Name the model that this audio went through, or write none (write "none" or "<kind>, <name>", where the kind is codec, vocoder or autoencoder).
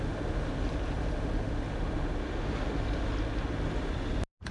none